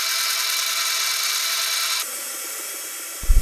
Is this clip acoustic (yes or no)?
yes